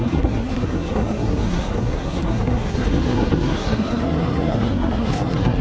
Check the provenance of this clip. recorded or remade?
remade